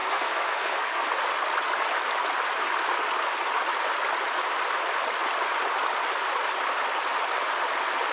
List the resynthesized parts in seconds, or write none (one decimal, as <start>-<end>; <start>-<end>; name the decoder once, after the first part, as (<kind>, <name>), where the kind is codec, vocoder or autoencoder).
0.0-1.0 (codec, SNAC)